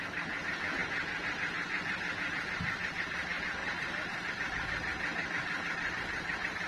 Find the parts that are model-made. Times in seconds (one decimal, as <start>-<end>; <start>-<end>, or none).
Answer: 3.6-4.3